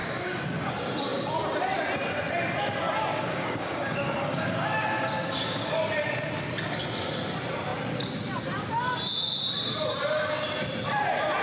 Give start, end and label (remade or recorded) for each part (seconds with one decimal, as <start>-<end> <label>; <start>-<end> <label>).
0.0-0.7 remade; 0.7-3.1 recorded; 3.1-5.8 remade; 5.8-11.4 recorded

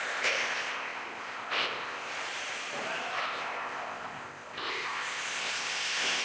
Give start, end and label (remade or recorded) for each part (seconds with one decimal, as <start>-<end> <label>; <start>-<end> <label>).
0.0-2.1 remade; 2.1-3.2 recorded; 3.2-6.2 remade

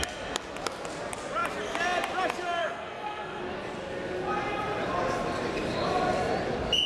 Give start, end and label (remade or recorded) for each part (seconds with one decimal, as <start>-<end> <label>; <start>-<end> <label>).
0.0-2.6 recorded; 2.6-3.4 remade; 3.4-6.9 recorded

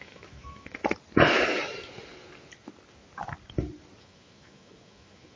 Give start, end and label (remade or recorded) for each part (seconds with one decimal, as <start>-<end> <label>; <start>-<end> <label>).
0.0-0.8 remade; 0.8-4.0 recorded; 4.0-5.4 remade

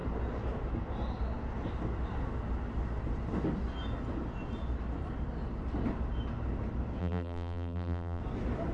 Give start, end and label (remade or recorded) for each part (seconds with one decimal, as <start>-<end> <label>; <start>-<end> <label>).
0.0-7.0 recorded; 7.0-8.2 remade; 8.2-8.7 recorded

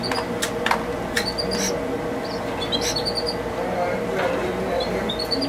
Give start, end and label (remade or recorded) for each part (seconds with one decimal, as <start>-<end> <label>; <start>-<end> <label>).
0.0-4.4 recorded; 4.4-5.1 remade; 5.1-5.5 recorded

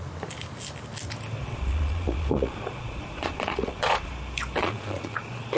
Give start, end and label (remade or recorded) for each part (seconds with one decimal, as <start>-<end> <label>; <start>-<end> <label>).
0.0-1.5 recorded; 1.5-4.1 remade; 4.1-4.6 recorded; 4.6-5.6 remade